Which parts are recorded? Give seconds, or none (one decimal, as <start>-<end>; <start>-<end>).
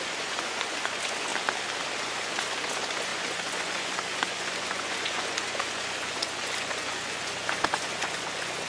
1.3-2.0